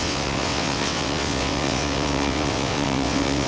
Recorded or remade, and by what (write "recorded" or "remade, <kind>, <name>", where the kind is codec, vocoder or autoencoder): remade, vocoder, WaveNeXt